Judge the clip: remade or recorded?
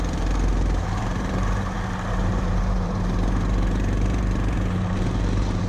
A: remade